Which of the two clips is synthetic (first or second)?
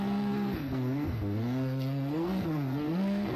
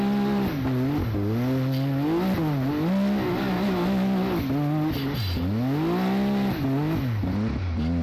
first